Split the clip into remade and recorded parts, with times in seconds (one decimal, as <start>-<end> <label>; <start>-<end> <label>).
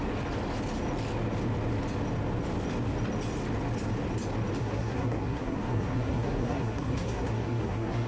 0.0-4.6 recorded; 4.6-8.1 remade